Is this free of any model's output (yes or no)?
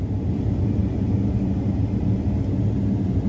yes